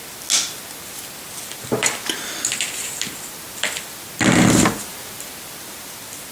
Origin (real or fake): real